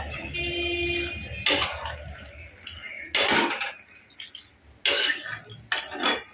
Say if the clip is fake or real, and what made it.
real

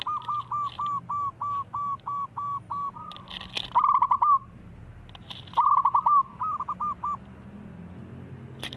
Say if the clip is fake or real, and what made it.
real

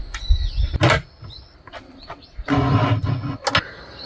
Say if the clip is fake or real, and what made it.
real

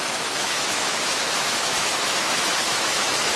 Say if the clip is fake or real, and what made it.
fake, autoencoder, DAC-VAE